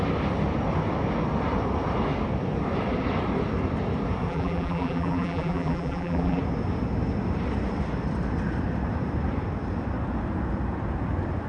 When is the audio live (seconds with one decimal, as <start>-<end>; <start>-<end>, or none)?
0.0-4.3; 6.4-11.5